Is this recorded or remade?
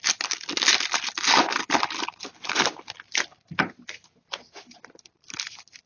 recorded